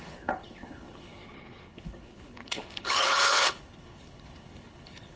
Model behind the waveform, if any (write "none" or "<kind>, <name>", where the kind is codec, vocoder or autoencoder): codec, HILCodec